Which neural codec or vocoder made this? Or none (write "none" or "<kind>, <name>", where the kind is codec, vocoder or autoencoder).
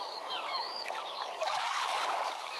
codec, DAC